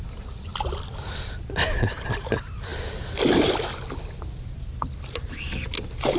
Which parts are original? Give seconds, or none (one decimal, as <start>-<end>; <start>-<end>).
0.0-6.2